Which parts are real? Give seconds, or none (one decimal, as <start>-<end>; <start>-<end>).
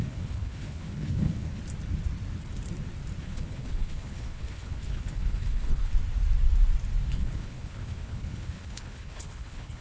1.6-3.2; 5.9-7.1